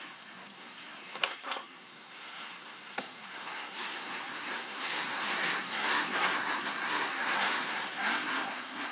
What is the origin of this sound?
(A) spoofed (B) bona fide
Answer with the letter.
A